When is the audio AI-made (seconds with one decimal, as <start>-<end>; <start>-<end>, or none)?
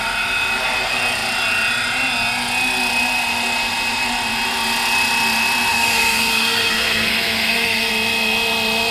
5.7-7.9